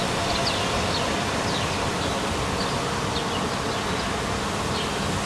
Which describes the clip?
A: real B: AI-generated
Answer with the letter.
A